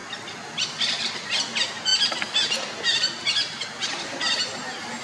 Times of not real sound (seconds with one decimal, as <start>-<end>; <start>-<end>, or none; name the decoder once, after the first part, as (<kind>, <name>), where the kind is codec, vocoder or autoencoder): none